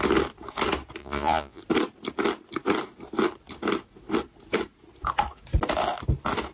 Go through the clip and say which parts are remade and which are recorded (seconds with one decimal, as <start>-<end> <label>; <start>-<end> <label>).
0.0-1.0 recorded; 1.0-1.6 remade; 1.6-6.5 recorded